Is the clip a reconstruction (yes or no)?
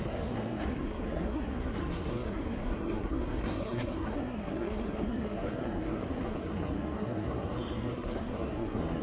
yes